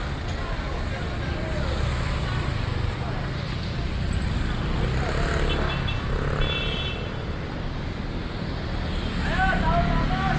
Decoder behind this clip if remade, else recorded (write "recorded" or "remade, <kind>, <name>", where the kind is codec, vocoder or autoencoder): recorded